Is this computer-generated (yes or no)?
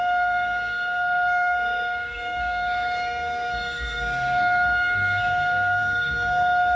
yes